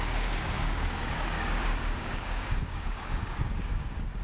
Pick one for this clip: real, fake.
fake